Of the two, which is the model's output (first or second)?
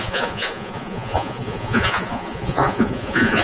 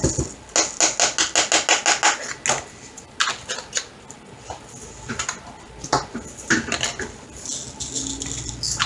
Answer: first